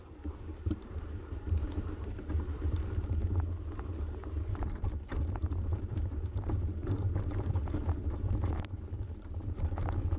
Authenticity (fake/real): fake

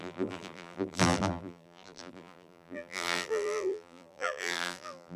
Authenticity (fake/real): fake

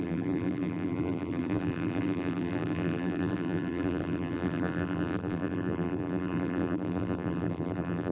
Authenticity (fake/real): fake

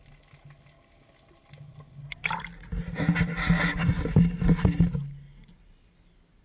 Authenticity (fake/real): real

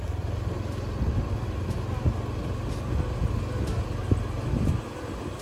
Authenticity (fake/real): real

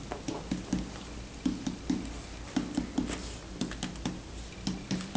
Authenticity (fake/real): real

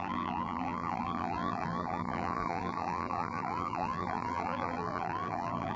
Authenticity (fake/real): fake